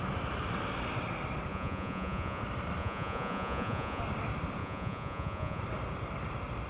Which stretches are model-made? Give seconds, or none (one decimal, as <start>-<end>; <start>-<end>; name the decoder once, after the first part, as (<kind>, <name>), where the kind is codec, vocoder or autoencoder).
1.5-2.4 (vocoder, Vocos); 2.8-4.0; 4.6-5.6